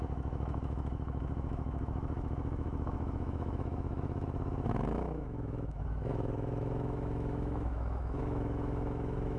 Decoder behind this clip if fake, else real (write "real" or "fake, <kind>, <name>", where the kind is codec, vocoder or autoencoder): fake, autoencoder, DAC-VAE